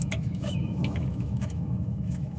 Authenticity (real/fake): fake